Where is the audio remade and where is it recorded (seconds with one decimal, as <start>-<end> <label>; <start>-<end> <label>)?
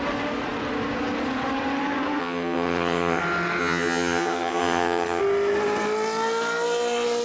0.0-2.2 recorded; 2.2-3.2 remade; 3.2-3.6 recorded; 3.6-5.2 remade; 5.2-7.2 recorded